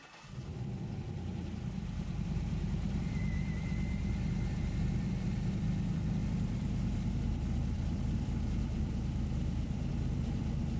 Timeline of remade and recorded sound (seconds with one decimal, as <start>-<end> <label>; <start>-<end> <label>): 0.0-10.8 remade